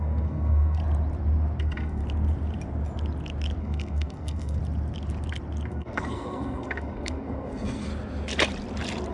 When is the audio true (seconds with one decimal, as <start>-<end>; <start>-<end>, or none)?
0.8-1.6; 2.0-3.6; 4.6-5.7; 7.9-9.1